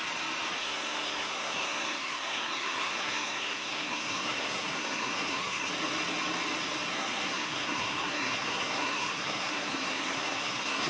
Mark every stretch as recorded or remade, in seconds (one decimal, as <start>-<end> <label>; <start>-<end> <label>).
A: 0.0-0.6 recorded; 0.6-5.7 remade; 5.7-6.9 recorded; 6.9-10.9 remade